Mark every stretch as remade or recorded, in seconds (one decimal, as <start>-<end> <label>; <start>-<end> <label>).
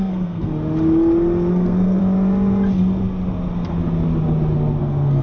0.0-0.5 remade; 0.5-1.5 recorded; 1.5-2.0 remade; 2.0-4.8 recorded; 4.8-5.2 remade